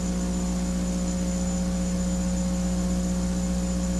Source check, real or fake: real